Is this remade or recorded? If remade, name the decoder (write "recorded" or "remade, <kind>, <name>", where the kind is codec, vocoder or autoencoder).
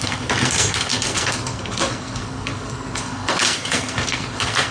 remade, codec, SNAC